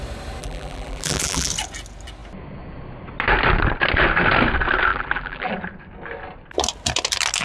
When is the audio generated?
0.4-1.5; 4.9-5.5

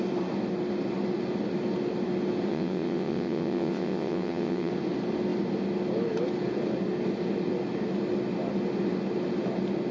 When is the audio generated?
2.5-4.7

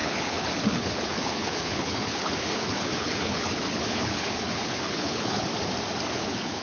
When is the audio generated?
0.0-5.5; 6.1-6.6

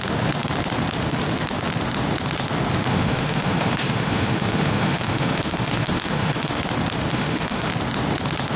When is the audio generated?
2.9-6.6; 7.1-7.7

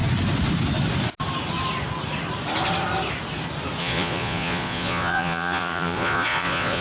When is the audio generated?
3.8-6.8